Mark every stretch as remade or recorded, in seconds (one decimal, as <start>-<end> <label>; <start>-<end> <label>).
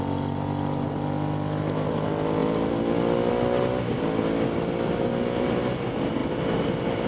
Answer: 0.0-7.1 recorded